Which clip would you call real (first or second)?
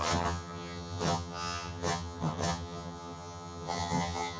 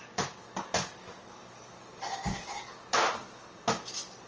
second